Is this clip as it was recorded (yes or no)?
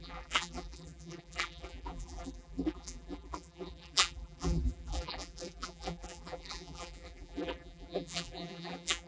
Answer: no